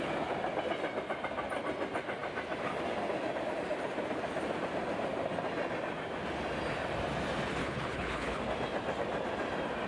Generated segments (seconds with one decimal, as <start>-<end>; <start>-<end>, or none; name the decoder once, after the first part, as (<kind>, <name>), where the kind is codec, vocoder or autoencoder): 7.6-8.4 (codec, HILCodec)